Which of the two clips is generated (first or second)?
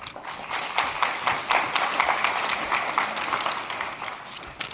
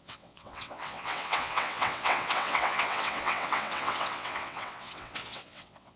second